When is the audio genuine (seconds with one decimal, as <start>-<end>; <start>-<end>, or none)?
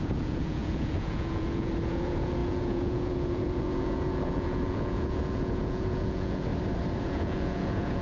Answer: 6.5-7.0